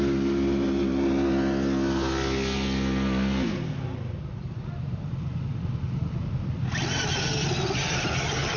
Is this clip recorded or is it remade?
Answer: recorded